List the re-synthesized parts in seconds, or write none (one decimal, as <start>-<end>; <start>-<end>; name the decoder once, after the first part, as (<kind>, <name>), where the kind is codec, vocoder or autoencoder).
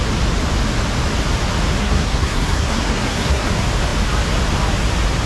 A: 1.8-3.5 (codec, SNAC)